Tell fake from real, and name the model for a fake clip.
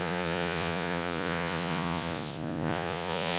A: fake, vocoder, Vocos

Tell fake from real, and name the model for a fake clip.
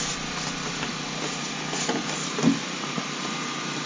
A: real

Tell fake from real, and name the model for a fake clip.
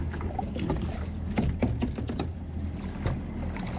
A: real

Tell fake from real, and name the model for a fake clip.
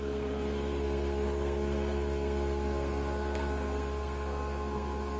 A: fake, codec, SNAC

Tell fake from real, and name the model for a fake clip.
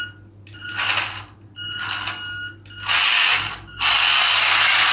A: real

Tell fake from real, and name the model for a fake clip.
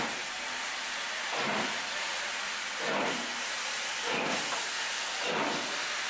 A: real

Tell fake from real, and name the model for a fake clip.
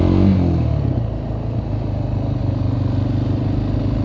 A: real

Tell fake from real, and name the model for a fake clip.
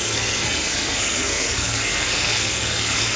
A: fake, codec, SNAC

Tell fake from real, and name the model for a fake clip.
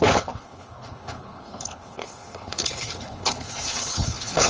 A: fake, codec, HILCodec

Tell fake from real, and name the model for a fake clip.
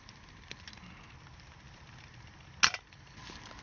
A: real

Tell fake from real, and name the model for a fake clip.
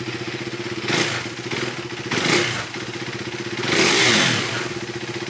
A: real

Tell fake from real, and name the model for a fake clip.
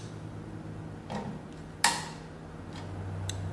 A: real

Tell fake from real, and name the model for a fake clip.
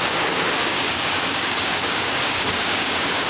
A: fake, codec, DAC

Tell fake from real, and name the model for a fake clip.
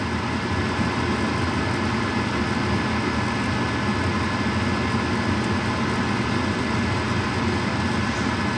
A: real